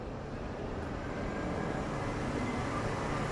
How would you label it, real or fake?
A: real